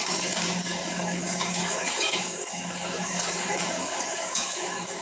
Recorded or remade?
remade